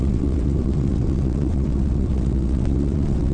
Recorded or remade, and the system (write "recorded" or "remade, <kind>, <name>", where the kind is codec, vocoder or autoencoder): remade, vocoder, WaveNeXt